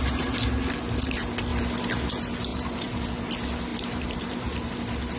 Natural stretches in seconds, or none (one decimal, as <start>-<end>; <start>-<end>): 0.0-2.5; 3.0-3.7; 4.7-5.2

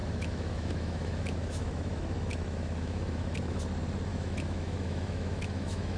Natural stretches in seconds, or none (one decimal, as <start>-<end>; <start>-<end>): 3.6-4.1

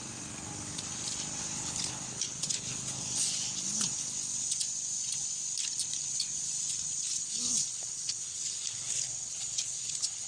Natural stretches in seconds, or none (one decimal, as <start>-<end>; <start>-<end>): 0.0-1.4; 4.3-7.2

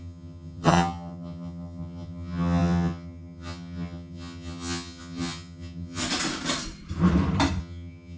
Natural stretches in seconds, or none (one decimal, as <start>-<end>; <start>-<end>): 6.0-7.6

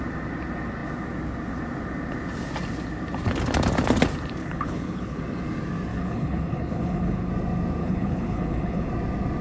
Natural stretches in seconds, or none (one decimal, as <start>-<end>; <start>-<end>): 0.0-4.4; 5.2-5.9; 7.3-7.8; 8.9-9.4

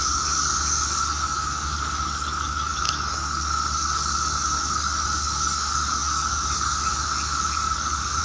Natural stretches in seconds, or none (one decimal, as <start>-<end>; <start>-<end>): none

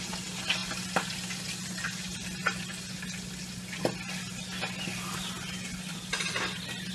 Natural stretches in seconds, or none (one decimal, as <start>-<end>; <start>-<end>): 0.0-6.9